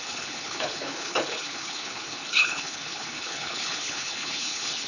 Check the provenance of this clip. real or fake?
fake